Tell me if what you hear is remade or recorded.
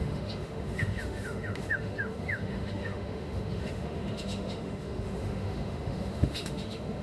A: remade